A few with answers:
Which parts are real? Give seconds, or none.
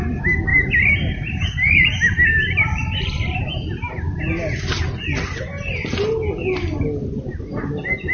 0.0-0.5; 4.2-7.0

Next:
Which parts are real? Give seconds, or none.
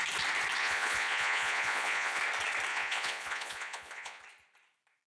0.0-0.6; 2.2-2.7; 4.2-5.1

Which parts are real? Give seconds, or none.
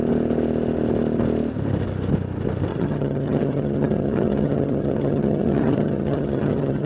0.0-2.7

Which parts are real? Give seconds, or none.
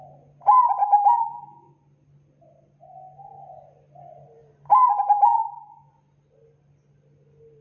0.0-0.8; 1.7-5.4; 5.9-7.6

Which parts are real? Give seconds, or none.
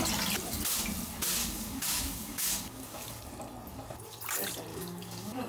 0.0-1.4; 3.2-4.7